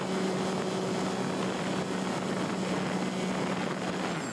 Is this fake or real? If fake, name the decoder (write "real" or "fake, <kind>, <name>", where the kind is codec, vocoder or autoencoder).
real